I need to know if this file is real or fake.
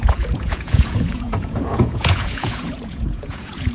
fake